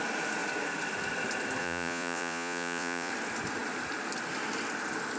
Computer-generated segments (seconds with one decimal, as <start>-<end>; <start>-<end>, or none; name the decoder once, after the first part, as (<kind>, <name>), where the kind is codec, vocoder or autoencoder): 1.6-3.1 (vocoder, Vocos)